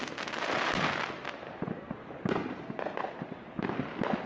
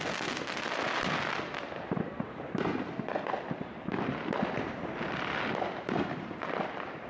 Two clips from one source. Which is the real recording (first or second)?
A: first